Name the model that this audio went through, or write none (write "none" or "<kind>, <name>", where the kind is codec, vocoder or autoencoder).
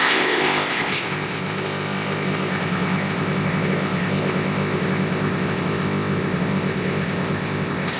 codec, ZipCodec